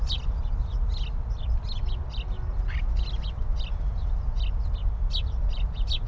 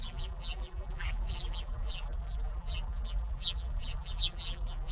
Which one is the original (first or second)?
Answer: first